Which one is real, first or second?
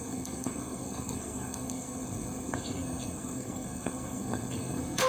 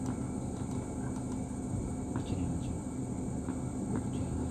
second